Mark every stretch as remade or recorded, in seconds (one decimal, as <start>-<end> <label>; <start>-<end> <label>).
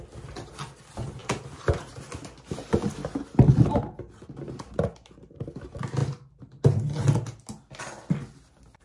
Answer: 0.0-8.8 recorded